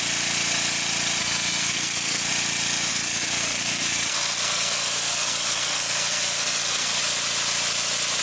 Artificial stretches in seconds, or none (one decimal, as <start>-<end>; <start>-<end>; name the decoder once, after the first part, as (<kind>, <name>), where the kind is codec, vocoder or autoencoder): 1.2-2.3 (codec, SNAC); 2.9-7.0